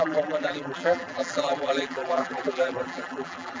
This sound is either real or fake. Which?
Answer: fake